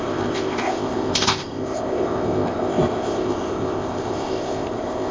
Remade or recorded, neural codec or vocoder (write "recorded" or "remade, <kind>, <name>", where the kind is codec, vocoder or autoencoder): remade, codec, ZipCodec